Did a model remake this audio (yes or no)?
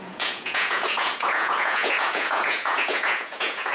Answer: yes